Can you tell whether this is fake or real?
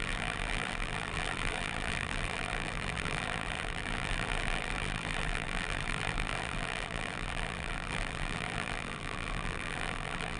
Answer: fake